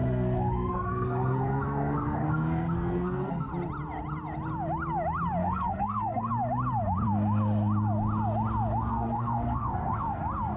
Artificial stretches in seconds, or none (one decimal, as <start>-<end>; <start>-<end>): 0.0-3.5; 5.4-6.3; 8.8-10.2